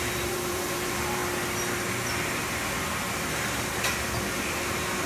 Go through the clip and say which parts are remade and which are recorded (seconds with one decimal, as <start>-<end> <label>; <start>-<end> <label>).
0.0-1.2 remade; 1.2-4.3 recorded; 4.3-5.1 remade